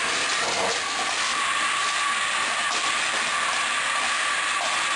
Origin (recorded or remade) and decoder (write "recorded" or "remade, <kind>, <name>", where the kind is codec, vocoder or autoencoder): recorded